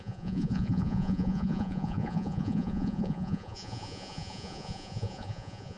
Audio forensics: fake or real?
fake